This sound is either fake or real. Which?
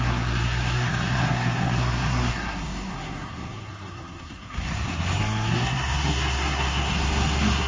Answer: fake